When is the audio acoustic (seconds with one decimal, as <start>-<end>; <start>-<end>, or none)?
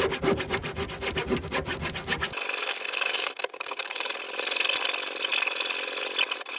0.0-2.6; 4.1-6.6